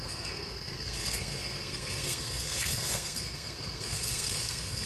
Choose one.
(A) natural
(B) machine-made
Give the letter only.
B